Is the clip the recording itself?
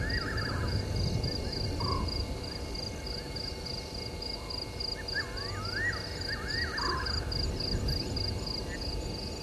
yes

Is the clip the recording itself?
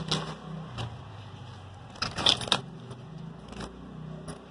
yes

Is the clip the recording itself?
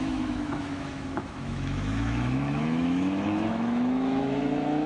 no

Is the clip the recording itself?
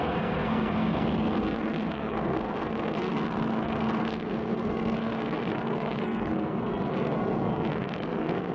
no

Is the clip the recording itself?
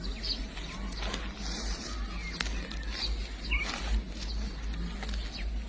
yes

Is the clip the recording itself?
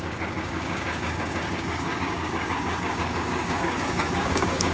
no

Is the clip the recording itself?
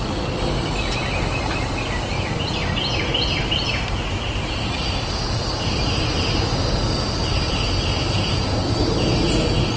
yes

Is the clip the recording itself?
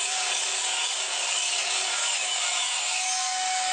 no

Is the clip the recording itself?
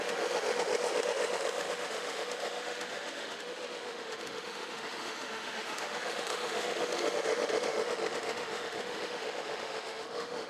no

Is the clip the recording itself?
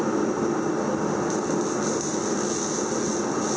yes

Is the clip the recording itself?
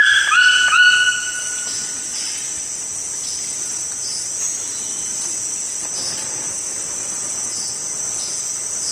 yes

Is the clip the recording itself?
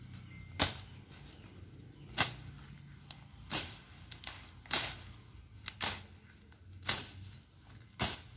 yes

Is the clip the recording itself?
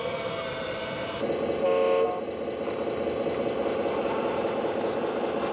yes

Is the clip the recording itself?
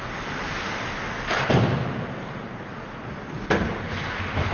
yes